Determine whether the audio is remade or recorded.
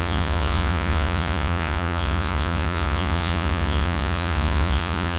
remade